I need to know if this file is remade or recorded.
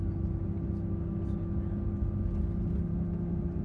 recorded